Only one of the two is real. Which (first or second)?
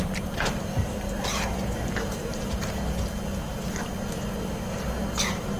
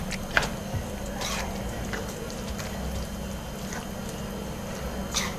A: second